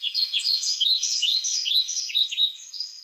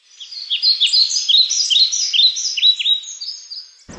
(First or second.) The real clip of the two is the second